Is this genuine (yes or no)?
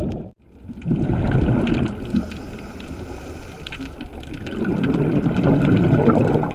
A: yes